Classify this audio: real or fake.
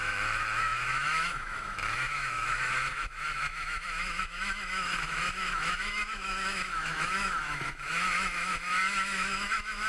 fake